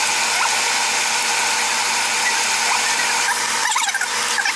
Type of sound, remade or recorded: recorded